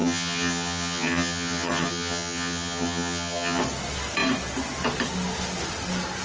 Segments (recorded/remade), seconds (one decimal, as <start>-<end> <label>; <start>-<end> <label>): 0.0-3.6 remade; 3.6-6.2 recorded

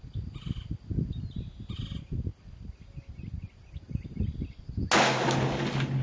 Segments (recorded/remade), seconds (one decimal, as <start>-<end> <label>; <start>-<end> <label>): 0.0-6.0 recorded

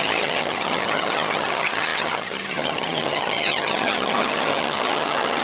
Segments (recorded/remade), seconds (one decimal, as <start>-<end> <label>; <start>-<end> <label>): 0.0-5.4 remade

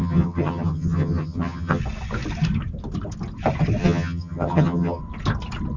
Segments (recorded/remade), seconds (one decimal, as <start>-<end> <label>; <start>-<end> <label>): 0.0-1.8 remade; 1.8-3.8 recorded; 3.8-5.0 remade; 5.0-5.8 recorded

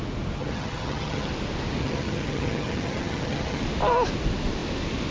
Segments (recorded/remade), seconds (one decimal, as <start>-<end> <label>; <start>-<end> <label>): 0.0-0.4 recorded; 0.4-1.3 remade; 1.3-1.8 recorded; 1.8-3.6 remade; 3.6-5.1 recorded

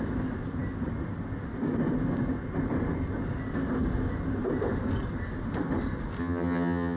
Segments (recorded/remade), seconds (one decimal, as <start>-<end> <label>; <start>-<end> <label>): 0.0-6.2 recorded; 6.2-7.0 remade